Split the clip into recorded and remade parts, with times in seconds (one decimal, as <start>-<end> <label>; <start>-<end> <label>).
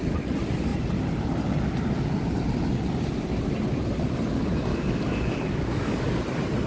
0.0-4.7 recorded; 4.7-6.2 remade; 6.2-6.7 recorded